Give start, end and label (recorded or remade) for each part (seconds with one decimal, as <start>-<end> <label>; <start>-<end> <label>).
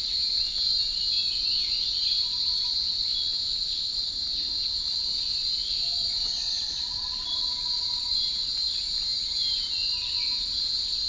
0.0-11.1 recorded